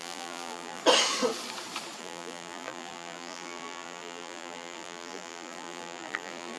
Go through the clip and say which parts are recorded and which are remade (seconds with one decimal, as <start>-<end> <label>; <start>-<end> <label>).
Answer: 0.0-0.8 remade; 0.8-2.0 recorded; 2.0-6.6 remade